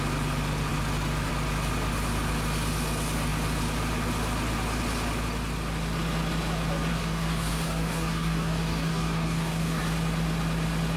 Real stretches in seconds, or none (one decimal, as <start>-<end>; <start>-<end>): 0.0-6.9; 9.8-11.0

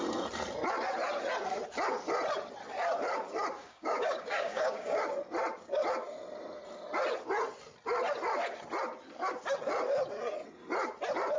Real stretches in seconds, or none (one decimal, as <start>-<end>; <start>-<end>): 0.0-3.6; 5.0-11.4

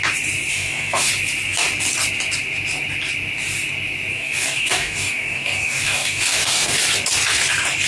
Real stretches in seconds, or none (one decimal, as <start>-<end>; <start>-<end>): 0.0-0.5; 1.1-4.1; 6.8-7.9